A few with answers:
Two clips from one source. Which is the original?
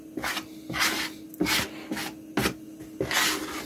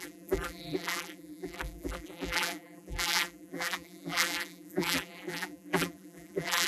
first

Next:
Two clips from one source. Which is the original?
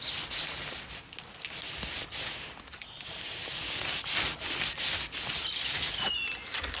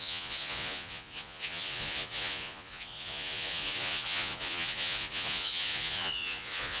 first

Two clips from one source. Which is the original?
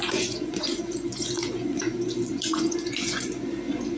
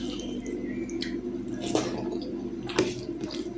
second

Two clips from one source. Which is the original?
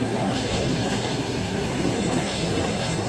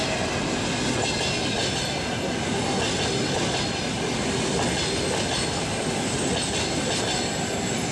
second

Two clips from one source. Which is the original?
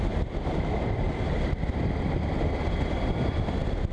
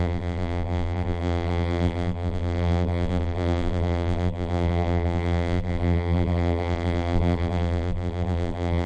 first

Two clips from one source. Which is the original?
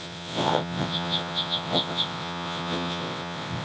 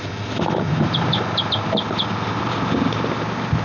second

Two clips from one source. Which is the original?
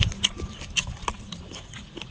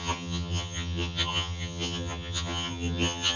first